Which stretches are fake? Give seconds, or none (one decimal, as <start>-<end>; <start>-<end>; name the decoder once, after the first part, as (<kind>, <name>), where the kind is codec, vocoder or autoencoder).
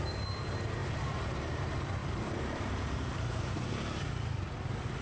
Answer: 0.8-1.5 (vocoder, BigVGAN v2); 2.0-4.1